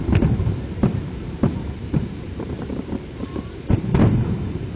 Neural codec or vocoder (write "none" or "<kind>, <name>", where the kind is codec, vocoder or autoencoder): vocoder, BigVGAN v2